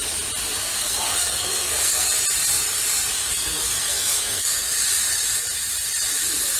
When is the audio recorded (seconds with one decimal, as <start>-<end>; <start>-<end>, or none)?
0.0-0.7; 2.1-3.2; 4.7-6.6